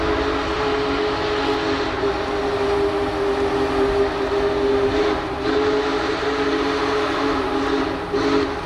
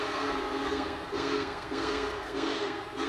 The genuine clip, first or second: first